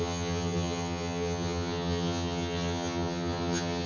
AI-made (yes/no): yes